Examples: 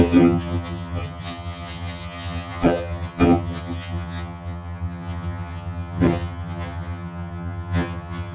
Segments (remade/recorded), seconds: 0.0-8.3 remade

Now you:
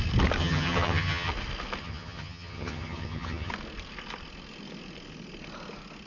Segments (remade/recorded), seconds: 0.0-0.4 recorded; 0.4-1.3 remade; 1.3-1.8 recorded; 1.8-3.5 remade; 3.5-6.1 recorded

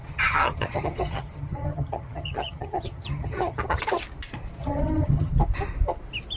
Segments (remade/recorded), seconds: 0.0-3.8 remade; 3.8-4.6 recorded; 4.6-5.3 remade; 5.3-6.4 recorded

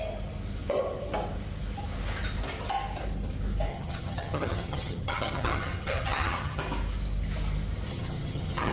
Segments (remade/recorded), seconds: 0.0-3.7 recorded; 3.7-6.6 remade; 6.6-7.9 recorded; 7.9-8.7 remade

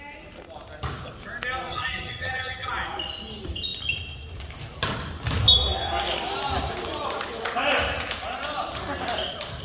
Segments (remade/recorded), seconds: 0.0-1.7 recorded; 1.7-2.7 remade; 2.7-9.6 recorded

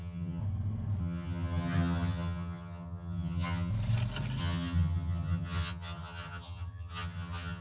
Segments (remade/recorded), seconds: 0.0-0.4 remade; 0.4-1.0 recorded; 1.0-3.7 remade; 3.7-4.4 recorded; 4.4-7.6 remade

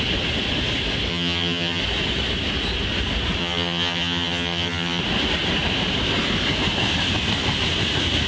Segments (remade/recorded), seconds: 0.0-1.1 recorded; 1.1-1.8 remade; 1.8-3.4 recorded; 3.4-5.0 remade; 5.0-8.3 recorded